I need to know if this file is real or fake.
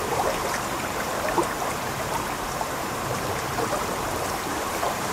fake